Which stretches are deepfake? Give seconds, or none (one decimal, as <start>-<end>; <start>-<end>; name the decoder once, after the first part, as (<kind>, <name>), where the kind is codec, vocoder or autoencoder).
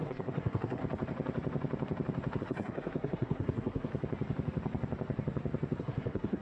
0.0-0.8 (codec, SNAC); 2.4-3.9; 5.8-6.4